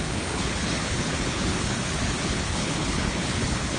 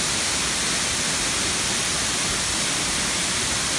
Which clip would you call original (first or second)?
second